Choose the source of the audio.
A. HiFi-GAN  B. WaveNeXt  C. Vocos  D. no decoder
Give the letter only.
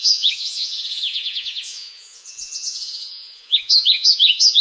C